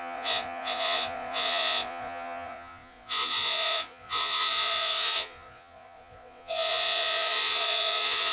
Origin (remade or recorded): remade